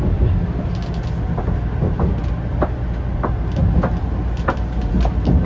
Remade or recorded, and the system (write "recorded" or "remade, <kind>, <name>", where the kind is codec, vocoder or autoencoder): recorded